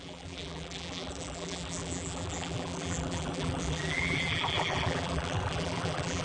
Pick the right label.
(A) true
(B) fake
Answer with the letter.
B